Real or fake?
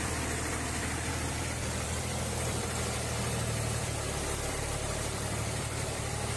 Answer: fake